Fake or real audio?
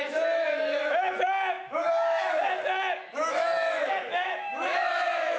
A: fake